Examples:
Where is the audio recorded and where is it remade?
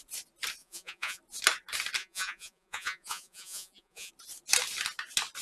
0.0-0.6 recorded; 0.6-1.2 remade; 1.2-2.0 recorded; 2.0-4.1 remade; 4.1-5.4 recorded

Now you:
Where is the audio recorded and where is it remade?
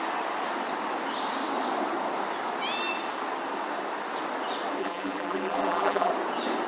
0.0-4.8 recorded; 4.8-6.1 remade; 6.1-6.7 recorded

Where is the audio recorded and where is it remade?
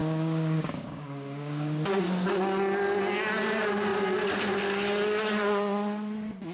0.0-2.0 remade; 2.0-6.5 recorded